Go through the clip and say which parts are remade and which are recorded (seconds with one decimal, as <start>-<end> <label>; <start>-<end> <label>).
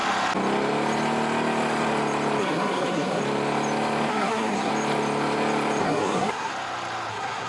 0.0-2.4 recorded; 2.4-3.2 remade; 3.2-4.1 recorded; 4.1-4.7 remade; 4.7-5.8 recorded; 5.8-6.5 remade; 6.5-7.1 recorded; 7.1-7.5 remade